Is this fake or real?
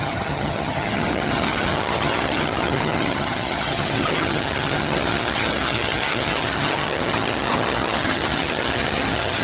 fake